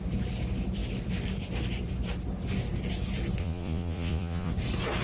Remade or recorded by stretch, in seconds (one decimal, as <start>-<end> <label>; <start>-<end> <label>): 0.0-3.4 recorded; 3.4-4.5 remade; 4.5-5.0 recorded